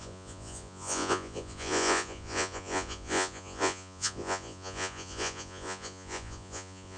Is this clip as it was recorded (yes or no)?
no